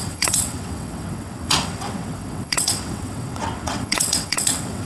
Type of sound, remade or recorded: remade